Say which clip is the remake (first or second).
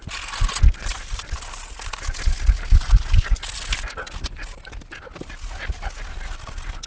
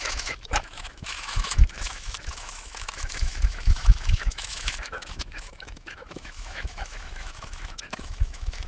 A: second